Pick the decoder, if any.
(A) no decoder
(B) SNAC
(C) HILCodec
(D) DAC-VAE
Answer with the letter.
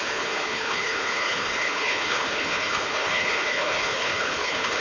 C